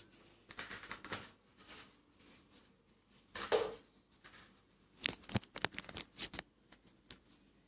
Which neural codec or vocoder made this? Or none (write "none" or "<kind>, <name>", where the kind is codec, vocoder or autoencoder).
none